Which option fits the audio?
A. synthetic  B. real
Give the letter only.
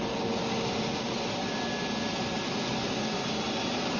B